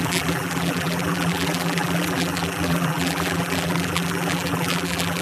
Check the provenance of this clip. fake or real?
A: fake